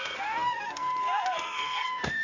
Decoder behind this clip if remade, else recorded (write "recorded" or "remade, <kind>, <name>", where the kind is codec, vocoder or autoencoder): remade, codec, SNAC